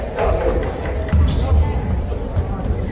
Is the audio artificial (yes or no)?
no